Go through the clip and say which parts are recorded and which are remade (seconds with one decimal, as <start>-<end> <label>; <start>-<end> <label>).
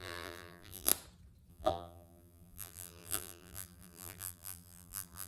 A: 0.0-0.9 remade; 0.9-1.5 recorded; 1.5-5.3 remade